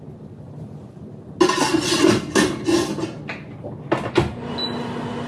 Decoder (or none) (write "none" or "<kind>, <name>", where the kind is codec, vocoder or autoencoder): none